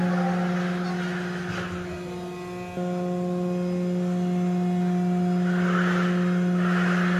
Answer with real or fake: real